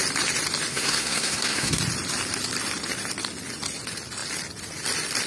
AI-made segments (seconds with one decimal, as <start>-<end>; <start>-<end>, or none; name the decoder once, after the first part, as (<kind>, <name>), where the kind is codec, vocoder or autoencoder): 0.7-1.8 (codec, SNAC)